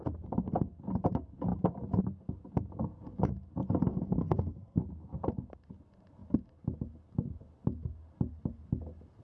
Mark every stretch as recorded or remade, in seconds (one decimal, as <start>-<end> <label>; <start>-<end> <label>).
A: 0.0-3.9 recorded; 3.9-4.8 remade; 4.8-9.2 recorded

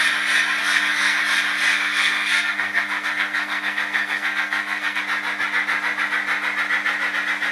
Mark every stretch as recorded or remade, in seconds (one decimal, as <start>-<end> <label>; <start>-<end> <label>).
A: 0.0-0.6 recorded; 0.6-1.2 remade; 1.2-1.7 recorded; 1.7-5.0 remade; 5.0-7.5 recorded